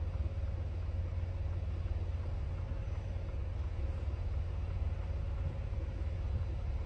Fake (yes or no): no